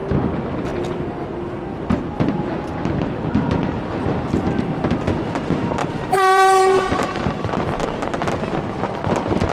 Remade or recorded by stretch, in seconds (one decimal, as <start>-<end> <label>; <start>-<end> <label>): 0.0-5.8 recorded; 5.8-7.3 remade; 7.3-9.5 recorded